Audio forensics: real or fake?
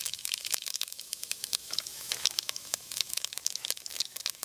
fake